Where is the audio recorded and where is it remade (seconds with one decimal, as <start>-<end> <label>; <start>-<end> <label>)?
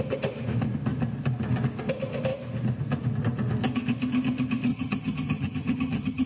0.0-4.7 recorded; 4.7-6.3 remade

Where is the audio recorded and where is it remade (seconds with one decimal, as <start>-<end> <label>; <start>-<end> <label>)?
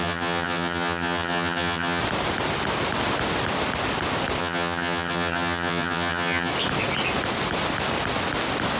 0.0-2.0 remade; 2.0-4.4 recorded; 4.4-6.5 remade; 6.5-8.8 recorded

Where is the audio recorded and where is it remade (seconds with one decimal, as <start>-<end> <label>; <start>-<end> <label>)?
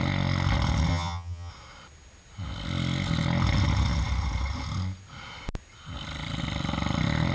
0.0-0.9 recorded; 0.9-1.5 remade; 1.5-7.3 recorded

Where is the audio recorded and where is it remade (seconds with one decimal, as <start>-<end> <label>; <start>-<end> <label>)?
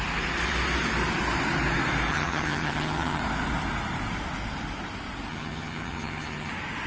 0.0-2.1 recorded; 2.1-3.2 remade; 3.2-5.3 recorded; 5.3-6.5 remade; 6.5-6.9 recorded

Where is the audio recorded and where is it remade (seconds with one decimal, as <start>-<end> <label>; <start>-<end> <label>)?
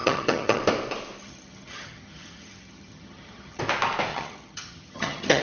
0.0-0.6 remade; 0.6-1.2 recorded; 1.2-3.6 remade; 3.6-4.1 recorded; 4.1-5.4 remade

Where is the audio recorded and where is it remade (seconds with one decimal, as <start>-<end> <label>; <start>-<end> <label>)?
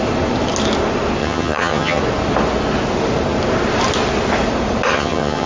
0.0-1.2 recorded; 1.2-2.0 remade; 2.0-4.9 recorded; 4.9-5.5 remade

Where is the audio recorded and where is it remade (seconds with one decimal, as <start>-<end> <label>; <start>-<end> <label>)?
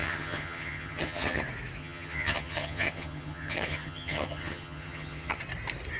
0.0-1.4 remade; 1.4-1.8 recorded; 1.8-5.4 remade; 5.4-6.0 recorded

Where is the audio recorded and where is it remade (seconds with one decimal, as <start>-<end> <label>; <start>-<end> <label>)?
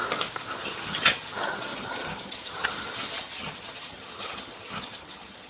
0.0-0.5 recorded; 0.5-5.5 remade